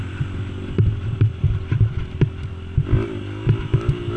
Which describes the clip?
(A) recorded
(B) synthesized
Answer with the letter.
A